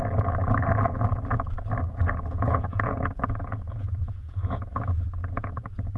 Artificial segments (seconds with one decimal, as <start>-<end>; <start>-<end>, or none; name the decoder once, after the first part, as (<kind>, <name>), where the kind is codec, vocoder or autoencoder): 2.3-6.0 (vocoder, Vocos)